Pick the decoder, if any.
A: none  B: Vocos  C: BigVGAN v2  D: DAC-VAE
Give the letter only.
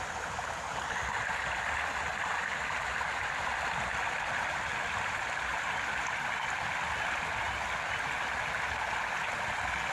A